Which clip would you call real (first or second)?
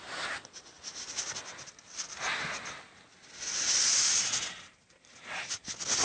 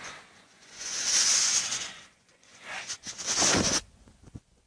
first